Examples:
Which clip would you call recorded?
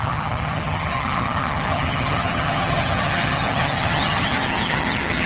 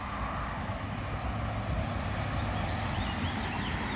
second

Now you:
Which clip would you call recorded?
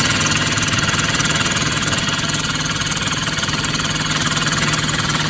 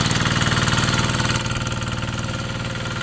second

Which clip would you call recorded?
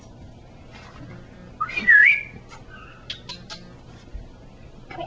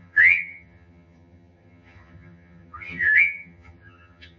first